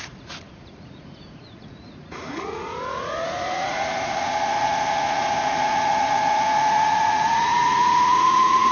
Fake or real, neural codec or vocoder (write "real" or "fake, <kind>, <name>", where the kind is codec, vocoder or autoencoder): fake, vocoder, Vocos